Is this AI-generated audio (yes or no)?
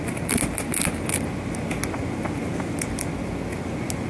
no